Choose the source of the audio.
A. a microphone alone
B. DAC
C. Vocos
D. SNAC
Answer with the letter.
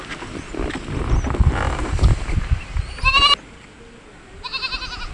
A